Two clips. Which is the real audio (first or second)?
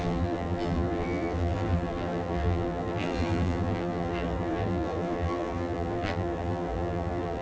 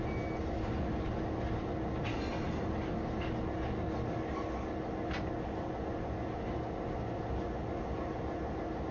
second